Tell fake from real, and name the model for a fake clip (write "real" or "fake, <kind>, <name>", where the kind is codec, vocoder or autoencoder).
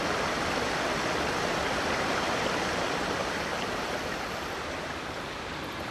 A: real